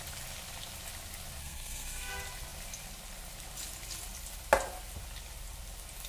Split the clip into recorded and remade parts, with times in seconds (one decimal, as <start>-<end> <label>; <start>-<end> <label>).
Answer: 0.0-1.4 recorded; 1.4-2.1 remade; 2.1-6.1 recorded